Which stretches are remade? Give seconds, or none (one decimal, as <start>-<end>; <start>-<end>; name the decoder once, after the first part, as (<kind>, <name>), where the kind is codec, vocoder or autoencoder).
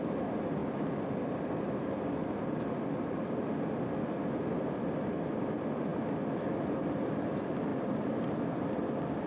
none